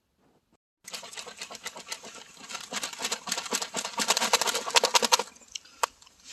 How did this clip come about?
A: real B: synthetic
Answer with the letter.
A